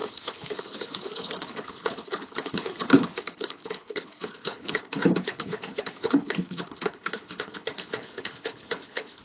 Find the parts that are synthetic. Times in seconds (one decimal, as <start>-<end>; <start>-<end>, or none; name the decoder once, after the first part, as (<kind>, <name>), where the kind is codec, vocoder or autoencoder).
0.0-9.2 (codec, HILCodec)

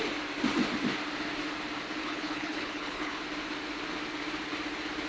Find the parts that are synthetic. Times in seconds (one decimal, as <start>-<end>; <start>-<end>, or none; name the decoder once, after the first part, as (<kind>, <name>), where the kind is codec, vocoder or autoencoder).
2.0-3.2 (codec, HILCodec)

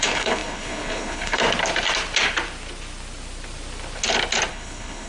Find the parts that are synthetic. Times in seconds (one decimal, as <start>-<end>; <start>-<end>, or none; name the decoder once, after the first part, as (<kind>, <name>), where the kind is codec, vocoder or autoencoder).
0.0-1.4 (codec, HILCodec); 4.5-5.1

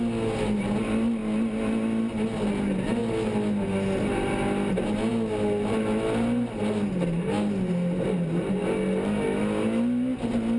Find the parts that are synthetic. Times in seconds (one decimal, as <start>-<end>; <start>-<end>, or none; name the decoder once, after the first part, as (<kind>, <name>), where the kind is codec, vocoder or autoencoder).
none

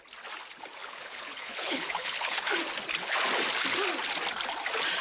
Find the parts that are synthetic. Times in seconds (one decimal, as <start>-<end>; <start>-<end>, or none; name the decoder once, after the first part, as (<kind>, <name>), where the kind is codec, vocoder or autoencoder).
0.8-2.5 (codec, HILCodec)

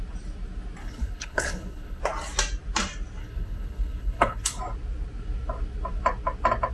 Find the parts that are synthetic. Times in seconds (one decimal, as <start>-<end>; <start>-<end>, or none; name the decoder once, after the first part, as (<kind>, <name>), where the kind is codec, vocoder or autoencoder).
0.8-2.0 (codec, HILCodec); 3.2-4.6

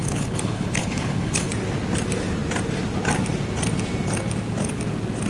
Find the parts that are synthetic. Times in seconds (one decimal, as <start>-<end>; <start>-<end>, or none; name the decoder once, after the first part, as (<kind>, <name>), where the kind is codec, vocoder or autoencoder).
0.0-1.5 (codec, HILCodec)